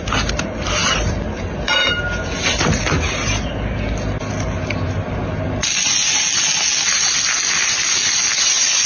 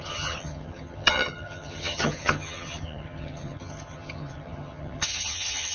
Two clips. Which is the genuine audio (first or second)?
first